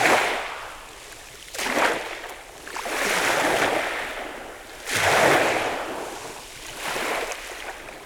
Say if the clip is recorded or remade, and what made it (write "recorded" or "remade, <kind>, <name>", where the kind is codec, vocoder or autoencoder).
recorded